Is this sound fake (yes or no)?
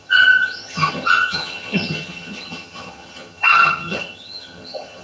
yes